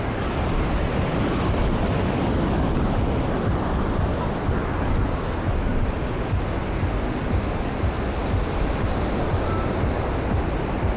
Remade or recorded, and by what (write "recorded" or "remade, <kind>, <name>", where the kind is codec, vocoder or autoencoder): recorded